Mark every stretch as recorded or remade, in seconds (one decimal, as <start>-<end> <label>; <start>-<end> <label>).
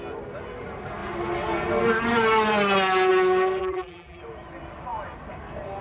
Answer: 0.0-3.6 recorded; 3.6-4.2 remade; 4.2-5.8 recorded